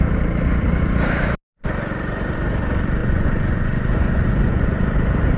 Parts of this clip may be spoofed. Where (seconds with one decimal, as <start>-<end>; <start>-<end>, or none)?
3.0-4.8